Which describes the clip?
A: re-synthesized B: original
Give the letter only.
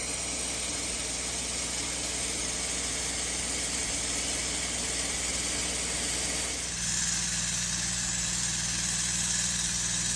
B